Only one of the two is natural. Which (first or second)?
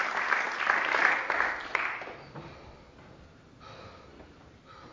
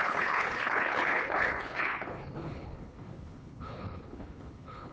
first